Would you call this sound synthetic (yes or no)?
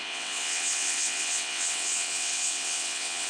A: yes